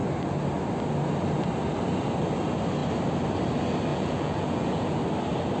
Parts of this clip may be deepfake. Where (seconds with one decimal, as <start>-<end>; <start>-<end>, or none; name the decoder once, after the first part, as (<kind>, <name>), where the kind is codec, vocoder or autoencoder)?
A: 3.9-5.0 (vocoder, Vocos)